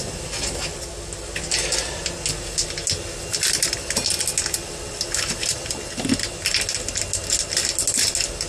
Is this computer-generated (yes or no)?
no